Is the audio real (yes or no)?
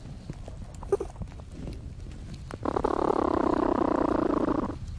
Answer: yes